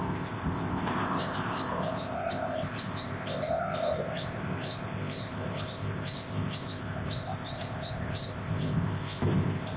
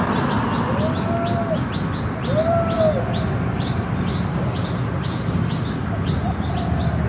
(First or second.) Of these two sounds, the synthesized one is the first